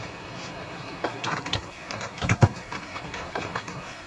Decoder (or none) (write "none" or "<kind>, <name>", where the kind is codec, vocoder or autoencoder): codec, SNAC